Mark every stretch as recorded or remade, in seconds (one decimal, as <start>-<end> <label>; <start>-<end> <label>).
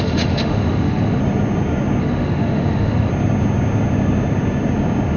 0.0-1.2 remade; 1.2-2.0 recorded; 2.0-3.1 remade; 3.1-5.2 recorded